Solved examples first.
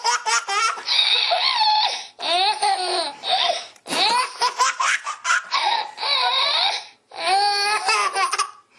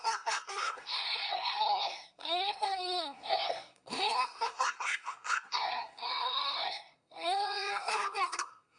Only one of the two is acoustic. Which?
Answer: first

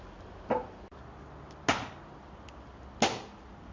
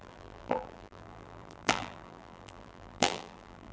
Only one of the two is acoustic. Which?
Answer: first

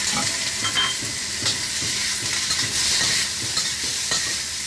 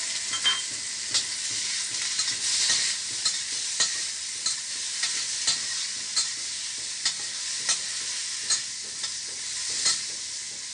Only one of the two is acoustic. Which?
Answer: second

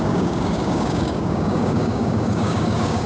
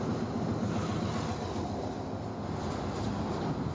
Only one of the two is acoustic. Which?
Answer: second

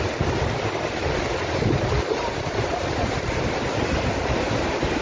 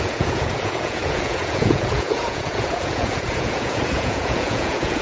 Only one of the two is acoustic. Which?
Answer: first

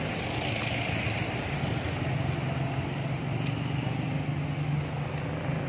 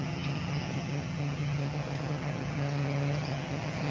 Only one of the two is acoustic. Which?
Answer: first